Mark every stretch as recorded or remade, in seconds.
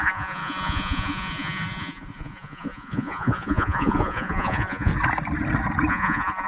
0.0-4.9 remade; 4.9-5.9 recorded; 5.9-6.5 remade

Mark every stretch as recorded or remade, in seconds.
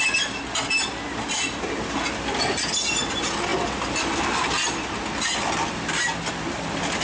0.0-7.0 recorded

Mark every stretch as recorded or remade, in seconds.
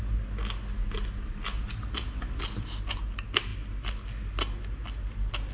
0.0-5.5 recorded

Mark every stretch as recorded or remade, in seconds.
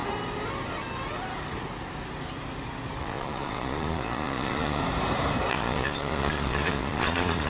0.0-3.0 recorded; 3.0-4.8 remade; 4.8-5.5 recorded; 5.5-7.5 remade